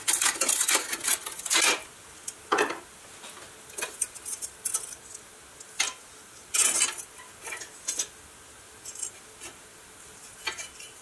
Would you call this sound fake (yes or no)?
no